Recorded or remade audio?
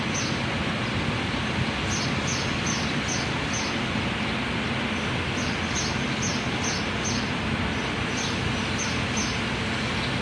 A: recorded